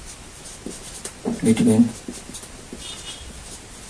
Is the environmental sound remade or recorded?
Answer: recorded